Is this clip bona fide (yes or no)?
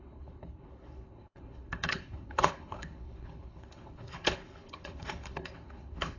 no